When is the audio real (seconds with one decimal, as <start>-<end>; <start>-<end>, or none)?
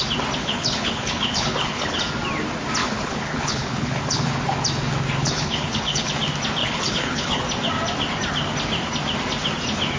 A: 0.0-0.4; 2.0-2.8; 4.3-5.2; 6.1-6.6; 7.4-10.0